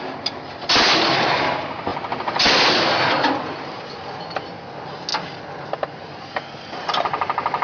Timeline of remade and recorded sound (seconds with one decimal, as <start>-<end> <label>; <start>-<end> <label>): 0.0-7.6 recorded